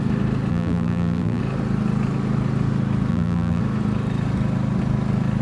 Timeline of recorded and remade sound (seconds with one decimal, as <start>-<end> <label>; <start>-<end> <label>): 0.0-0.5 recorded; 0.5-1.4 remade; 1.4-3.1 recorded; 3.1-3.6 remade; 3.6-5.4 recorded